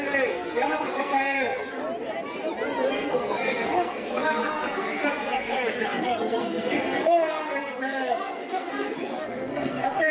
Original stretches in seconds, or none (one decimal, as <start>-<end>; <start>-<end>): 1.8-2.9